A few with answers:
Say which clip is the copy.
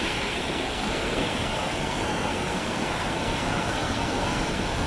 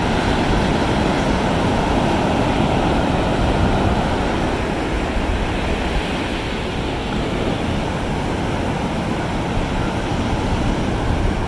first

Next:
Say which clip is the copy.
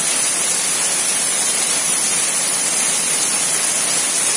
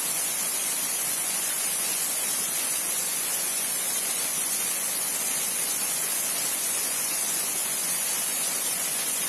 second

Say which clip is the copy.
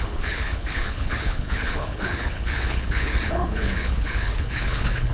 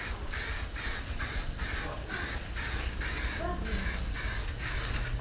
first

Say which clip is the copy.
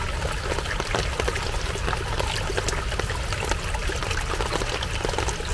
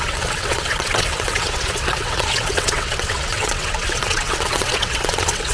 second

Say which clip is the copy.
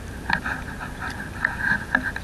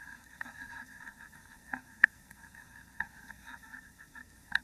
second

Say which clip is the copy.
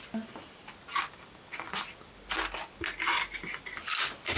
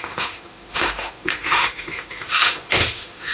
second